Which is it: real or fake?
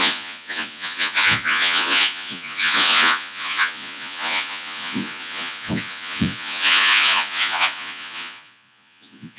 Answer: fake